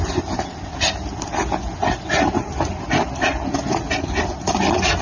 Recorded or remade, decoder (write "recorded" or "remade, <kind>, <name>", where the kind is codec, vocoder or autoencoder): recorded